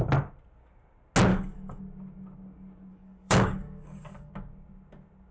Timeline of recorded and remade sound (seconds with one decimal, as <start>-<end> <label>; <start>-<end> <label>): 0.0-1.3 recorded; 1.3-1.8 remade; 1.8-2.9 recorded; 2.9-4.3 remade; 4.3-5.3 recorded